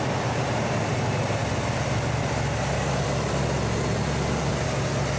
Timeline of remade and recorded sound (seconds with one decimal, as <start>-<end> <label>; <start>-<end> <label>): 0.0-5.2 recorded